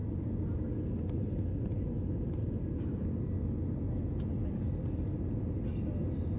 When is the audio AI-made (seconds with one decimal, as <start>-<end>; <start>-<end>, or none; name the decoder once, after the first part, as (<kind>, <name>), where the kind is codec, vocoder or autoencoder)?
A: none